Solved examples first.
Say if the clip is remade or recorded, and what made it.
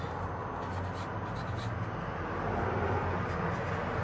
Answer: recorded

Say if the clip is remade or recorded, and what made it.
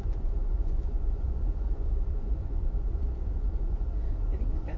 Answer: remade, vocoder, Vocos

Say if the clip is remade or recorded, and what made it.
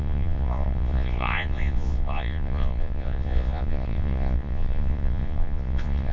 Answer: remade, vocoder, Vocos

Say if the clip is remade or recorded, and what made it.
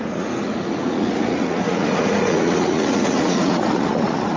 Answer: remade, vocoder, Vocos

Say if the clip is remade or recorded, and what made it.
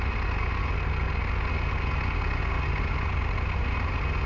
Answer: recorded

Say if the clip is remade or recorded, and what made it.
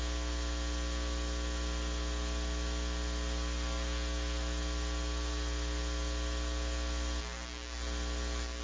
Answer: recorded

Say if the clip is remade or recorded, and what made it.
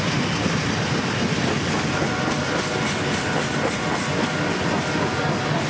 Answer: recorded